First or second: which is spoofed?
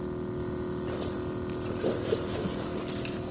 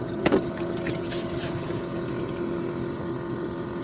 second